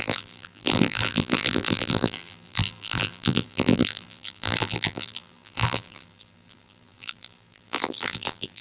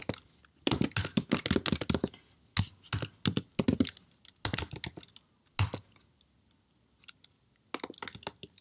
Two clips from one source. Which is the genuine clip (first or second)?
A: second